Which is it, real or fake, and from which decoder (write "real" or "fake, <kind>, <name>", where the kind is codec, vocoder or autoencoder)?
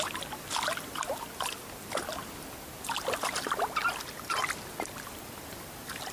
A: real